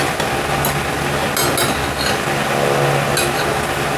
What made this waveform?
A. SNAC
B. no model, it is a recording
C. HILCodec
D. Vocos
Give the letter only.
B